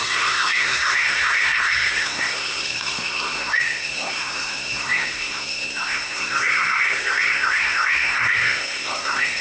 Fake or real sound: fake